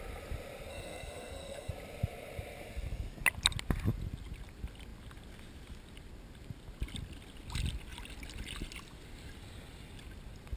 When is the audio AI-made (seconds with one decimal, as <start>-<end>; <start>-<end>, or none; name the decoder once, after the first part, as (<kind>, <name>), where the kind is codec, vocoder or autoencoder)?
0.7-1.7 (codec, SNAC)